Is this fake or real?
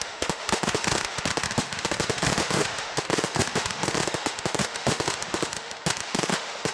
fake